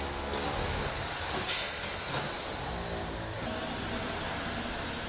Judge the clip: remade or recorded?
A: recorded